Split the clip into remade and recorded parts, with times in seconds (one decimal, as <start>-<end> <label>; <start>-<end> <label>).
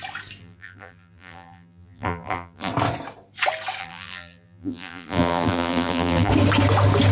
0.0-0.4 recorded; 0.4-2.7 remade; 2.7-3.8 recorded; 3.8-6.3 remade; 6.3-7.1 recorded